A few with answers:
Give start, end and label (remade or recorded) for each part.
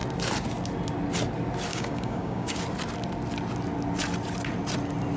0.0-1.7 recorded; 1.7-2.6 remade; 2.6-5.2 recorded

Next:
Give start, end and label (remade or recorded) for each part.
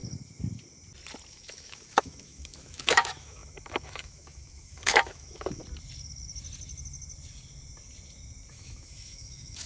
0.0-1.3 recorded; 1.3-5.6 remade; 5.6-8.5 recorded; 8.5-9.7 remade